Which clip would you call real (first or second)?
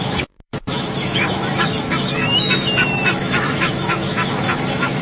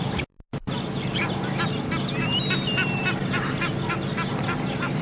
second